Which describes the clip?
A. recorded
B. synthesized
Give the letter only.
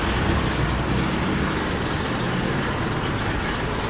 A